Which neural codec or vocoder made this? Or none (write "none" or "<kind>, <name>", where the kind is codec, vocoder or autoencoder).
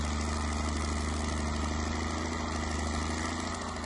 none